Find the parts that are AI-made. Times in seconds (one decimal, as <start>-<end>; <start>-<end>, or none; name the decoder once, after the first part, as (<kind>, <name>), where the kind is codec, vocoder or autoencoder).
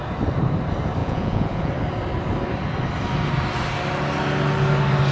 1.0-1.7 (vocoder, Vocos)